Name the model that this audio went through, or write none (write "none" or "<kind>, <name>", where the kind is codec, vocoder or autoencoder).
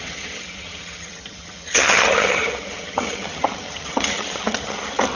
vocoder, HiFi-GAN